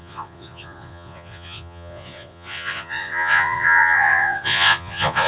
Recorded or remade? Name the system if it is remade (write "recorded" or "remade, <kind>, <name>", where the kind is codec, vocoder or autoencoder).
remade, vocoder, Vocos